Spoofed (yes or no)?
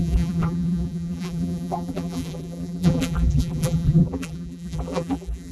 yes